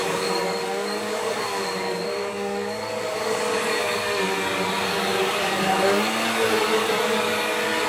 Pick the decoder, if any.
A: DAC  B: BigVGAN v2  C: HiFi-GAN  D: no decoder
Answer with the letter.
A